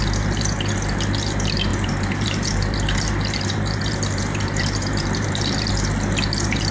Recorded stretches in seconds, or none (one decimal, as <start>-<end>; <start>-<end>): 0.0-1.7; 5.7-6.7